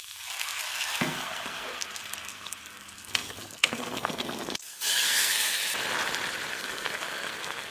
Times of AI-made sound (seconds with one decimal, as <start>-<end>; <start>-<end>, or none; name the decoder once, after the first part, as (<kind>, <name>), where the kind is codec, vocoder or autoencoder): 0.0-5.6 (codec, SNAC); 6.5-7.7